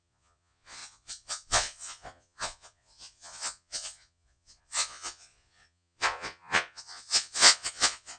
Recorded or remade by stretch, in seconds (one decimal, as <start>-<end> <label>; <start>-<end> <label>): 0.0-8.2 remade